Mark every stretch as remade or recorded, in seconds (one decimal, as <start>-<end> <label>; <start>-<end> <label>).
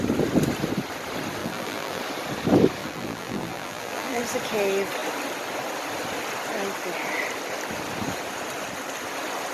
0.0-1.4 recorded; 1.4-2.0 remade; 2.0-2.8 recorded; 2.8-4.2 remade; 4.2-9.5 recorded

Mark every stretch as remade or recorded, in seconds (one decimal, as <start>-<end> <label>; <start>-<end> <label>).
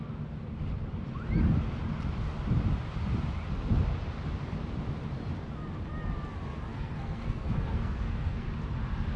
0.0-6.7 recorded; 6.7-8.5 remade; 8.5-9.2 recorded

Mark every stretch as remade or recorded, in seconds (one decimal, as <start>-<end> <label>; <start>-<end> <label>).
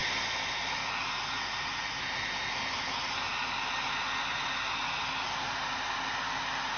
0.0-6.8 recorded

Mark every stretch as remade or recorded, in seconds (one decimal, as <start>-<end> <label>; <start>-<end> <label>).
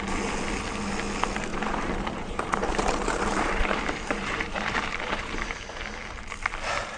0.0-1.5 recorded; 1.5-5.7 remade; 5.7-7.0 recorded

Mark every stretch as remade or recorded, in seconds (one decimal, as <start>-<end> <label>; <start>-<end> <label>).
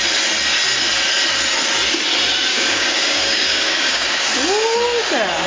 0.0-2.5 recorded; 2.5-4.3 remade; 4.3-5.5 recorded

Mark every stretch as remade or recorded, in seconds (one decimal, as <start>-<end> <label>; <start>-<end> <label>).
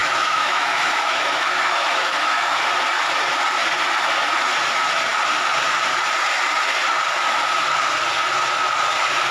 0.0-2.6 remade; 2.6-9.3 recorded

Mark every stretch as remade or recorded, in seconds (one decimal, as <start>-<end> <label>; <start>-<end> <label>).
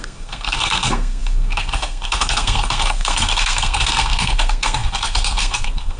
0.0-6.0 remade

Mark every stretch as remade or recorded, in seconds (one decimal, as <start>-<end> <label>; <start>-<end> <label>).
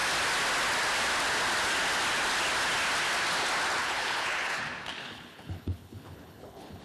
0.0-3.8 recorded; 3.8-4.6 remade; 4.6-5.0 recorded; 5.0-6.8 remade